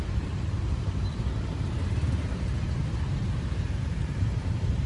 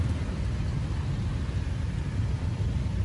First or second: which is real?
second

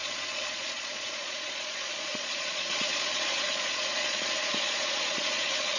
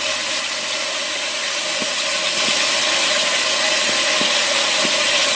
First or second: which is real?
second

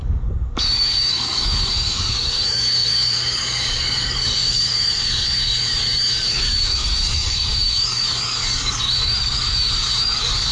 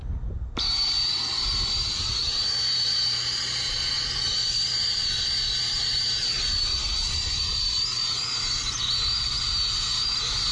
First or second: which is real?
second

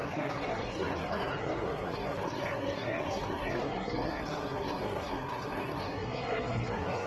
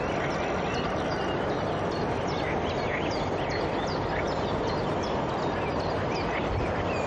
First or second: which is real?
second